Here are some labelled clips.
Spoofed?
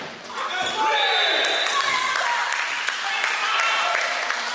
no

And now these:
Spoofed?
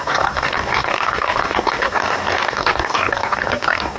yes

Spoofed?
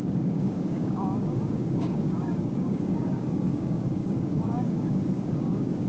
yes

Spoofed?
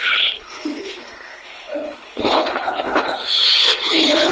yes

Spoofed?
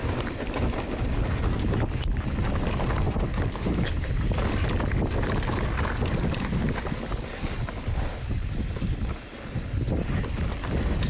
no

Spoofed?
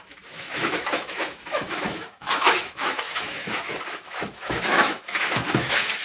yes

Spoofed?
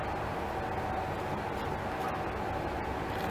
no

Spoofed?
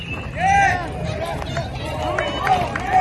no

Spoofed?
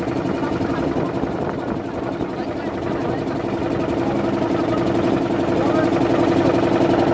no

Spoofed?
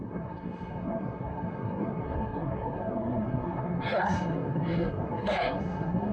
yes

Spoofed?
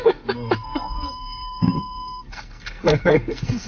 yes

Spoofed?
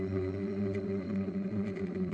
yes